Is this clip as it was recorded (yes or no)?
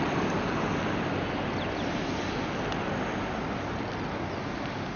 yes